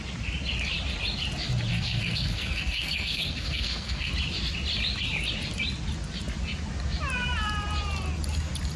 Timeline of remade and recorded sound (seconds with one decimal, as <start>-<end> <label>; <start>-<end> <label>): 0.0-1.7 recorded; 1.7-4.1 remade; 4.1-8.8 recorded